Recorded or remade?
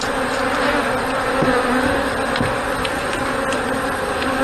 recorded